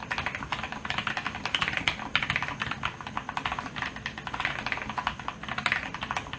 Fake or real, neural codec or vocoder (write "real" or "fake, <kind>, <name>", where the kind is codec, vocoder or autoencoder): real